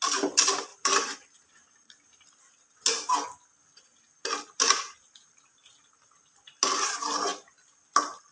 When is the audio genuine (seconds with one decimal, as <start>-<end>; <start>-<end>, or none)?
0.0-0.7; 2.3-8.3